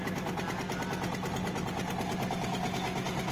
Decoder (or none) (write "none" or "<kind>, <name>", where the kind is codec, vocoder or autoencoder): none